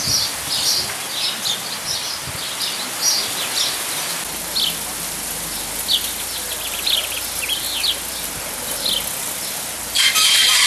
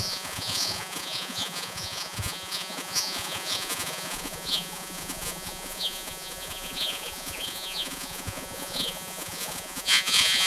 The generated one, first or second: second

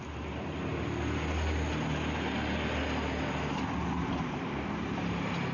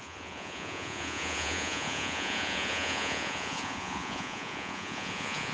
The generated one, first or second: second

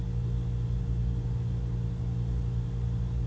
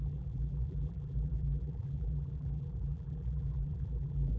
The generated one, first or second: second